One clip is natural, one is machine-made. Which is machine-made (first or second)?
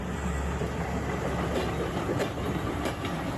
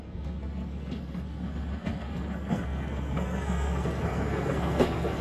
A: second